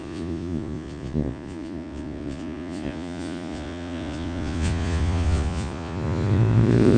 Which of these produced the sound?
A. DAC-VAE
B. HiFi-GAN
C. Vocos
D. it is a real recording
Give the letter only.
C